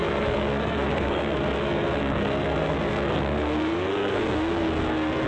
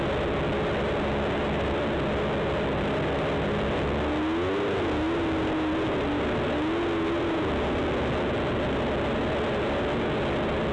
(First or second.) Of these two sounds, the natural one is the second